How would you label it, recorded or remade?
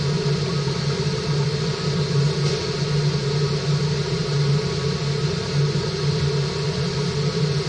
recorded